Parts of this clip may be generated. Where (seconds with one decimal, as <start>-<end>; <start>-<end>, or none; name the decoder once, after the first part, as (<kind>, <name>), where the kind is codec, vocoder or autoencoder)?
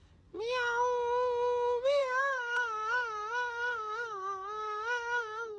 2.0-5.6 (codec, SNAC)